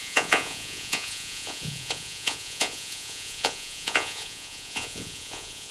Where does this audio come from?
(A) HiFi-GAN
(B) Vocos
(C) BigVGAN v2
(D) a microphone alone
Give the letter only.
B